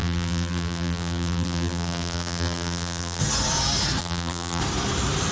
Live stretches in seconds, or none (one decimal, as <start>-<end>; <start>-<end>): 3.2-4.0; 4.6-5.3